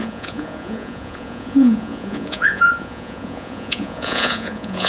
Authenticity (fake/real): fake